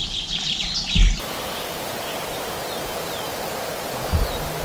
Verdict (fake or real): real